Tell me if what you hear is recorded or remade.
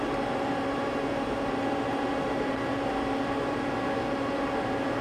remade